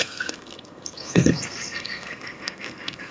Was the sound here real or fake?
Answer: fake